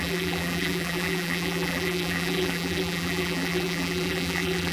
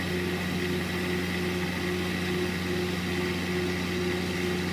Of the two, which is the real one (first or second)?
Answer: second